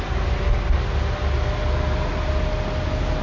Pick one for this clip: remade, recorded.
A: recorded